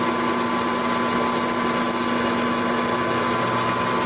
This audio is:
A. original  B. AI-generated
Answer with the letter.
A